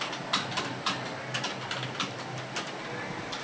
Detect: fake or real real